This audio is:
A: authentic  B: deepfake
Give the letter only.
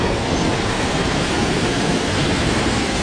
B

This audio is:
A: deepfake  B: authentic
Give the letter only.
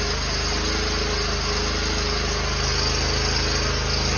B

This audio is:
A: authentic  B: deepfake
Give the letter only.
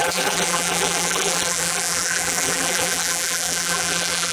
B